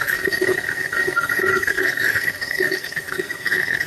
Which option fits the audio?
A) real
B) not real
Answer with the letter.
B